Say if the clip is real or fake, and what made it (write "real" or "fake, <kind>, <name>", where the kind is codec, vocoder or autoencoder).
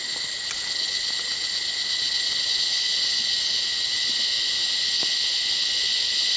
real